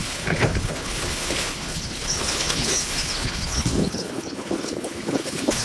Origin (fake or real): fake